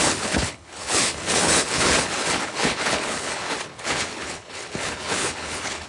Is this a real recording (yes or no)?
no